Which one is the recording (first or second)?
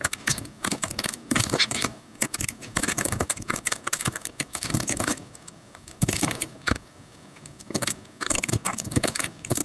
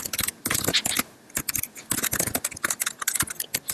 second